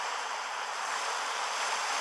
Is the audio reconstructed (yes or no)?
yes